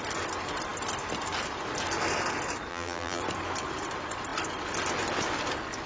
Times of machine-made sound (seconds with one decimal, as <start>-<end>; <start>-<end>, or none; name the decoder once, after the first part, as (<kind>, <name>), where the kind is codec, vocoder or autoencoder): 2.7-3.2 (vocoder, BigVGAN v2)